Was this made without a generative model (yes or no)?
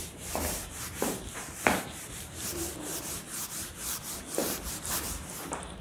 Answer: no